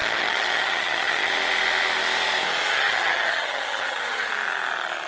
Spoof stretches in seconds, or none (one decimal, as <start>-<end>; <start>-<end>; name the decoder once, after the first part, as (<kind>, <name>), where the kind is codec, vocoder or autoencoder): 0.0-1.3 (vocoder, HiFi-GAN); 2.7-4.3